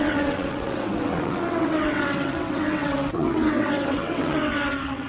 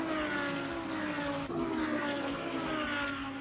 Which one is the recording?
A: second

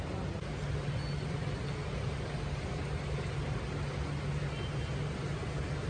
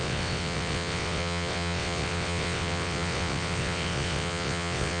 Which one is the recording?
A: first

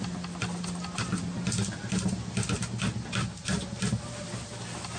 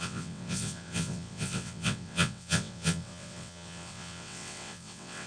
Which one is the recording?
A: first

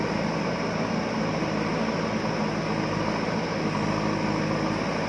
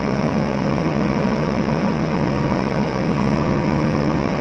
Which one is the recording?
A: first